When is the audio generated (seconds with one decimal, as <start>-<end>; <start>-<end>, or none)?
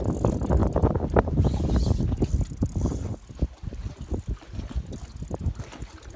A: none